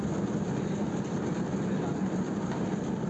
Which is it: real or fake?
real